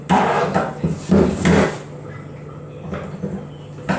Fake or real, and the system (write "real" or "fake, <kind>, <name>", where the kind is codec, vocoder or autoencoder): real